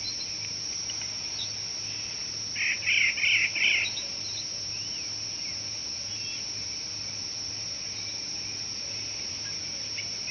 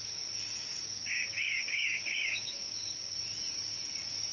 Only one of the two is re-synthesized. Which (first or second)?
second